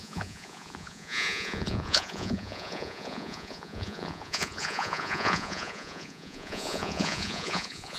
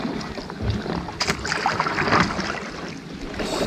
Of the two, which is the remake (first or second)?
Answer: first